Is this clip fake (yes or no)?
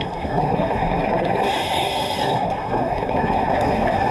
yes